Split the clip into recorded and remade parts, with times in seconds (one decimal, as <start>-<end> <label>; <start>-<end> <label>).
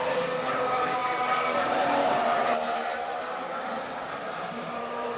0.0-5.2 remade